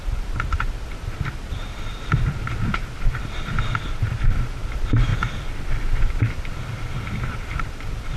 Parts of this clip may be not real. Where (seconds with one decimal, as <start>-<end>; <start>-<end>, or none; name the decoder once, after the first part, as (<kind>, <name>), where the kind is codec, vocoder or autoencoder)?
0.0-5.1 (vocoder, BigVGAN v2); 7.6-8.2